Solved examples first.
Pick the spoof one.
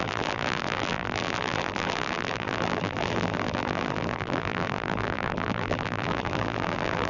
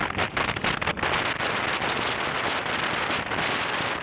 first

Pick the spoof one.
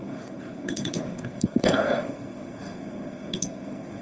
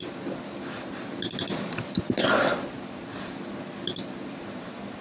first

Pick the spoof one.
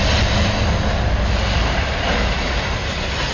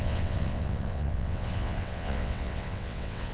second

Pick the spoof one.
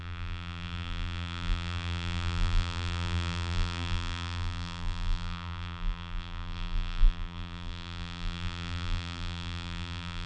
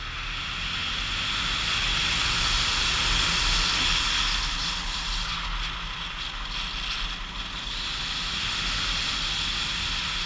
first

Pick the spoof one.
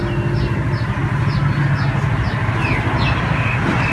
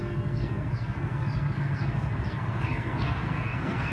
second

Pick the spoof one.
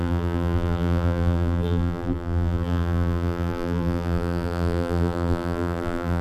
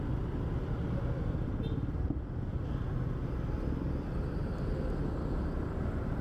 first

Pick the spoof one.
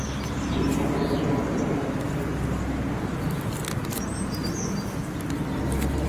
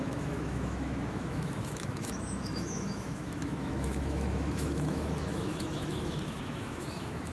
second